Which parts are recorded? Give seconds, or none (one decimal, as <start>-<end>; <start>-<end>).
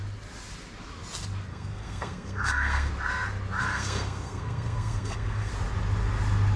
0.0-1.5; 2.9-3.6; 5.5-6.6